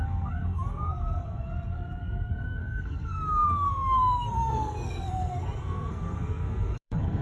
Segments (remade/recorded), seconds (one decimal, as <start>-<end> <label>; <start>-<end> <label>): 0.0-7.2 remade